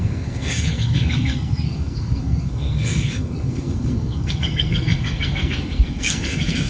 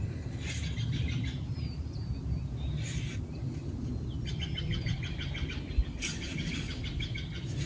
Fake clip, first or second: first